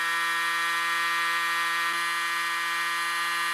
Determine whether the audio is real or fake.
real